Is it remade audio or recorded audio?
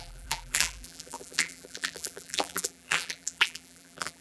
remade